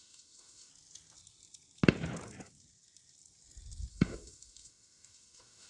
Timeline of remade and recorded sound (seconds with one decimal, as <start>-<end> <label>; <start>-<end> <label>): 0.0-0.7 remade; 0.7-3.9 recorded; 3.9-5.7 remade